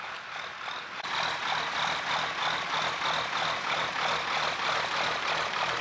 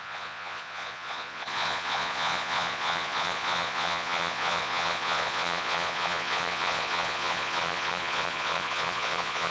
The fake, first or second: second